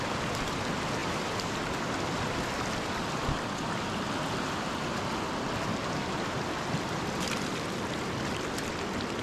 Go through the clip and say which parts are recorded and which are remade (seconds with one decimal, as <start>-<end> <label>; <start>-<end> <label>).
0.0-1.0 recorded; 1.0-1.5 remade; 1.5-9.2 recorded